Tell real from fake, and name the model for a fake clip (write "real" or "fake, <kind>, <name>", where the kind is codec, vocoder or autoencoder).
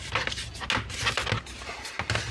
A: real